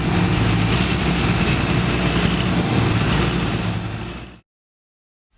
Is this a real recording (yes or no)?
yes